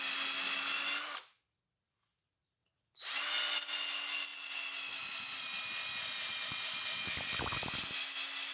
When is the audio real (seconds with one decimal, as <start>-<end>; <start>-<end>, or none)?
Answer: 0.0-8.5